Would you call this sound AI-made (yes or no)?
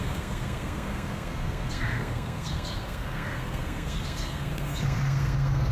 yes